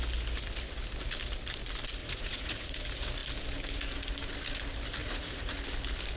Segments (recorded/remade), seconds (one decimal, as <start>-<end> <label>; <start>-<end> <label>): 0.0-2.0 recorded; 2.0-2.8 remade; 2.8-5.0 recorded; 5.0-5.6 remade; 5.6-6.2 recorded